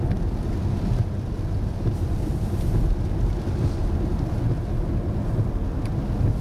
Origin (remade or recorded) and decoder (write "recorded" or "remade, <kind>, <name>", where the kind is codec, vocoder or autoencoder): recorded